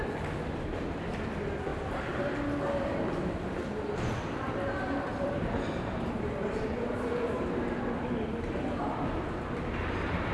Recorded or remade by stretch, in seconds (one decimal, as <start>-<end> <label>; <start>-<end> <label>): 0.0-1.7 recorded; 1.7-2.2 remade; 2.2-5.1 recorded; 5.1-9.4 remade; 9.4-10.3 recorded